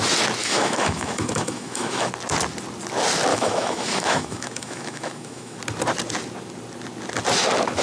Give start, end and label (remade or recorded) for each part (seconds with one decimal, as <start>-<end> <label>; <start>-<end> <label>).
0.0-0.4 recorded; 0.4-2.1 remade; 2.1-3.3 recorded; 3.3-5.6 remade; 5.6-7.8 recorded